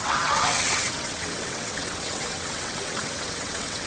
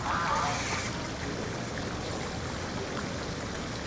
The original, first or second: second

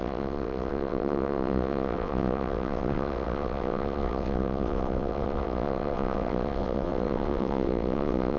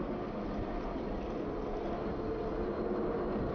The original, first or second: second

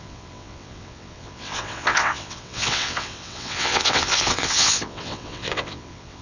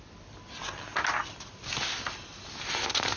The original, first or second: second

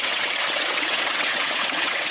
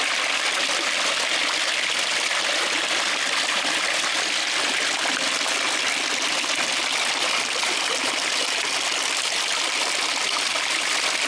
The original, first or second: second